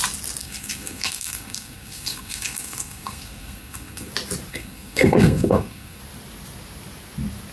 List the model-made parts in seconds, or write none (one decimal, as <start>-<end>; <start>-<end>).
0.4-4.1; 4.5-6.0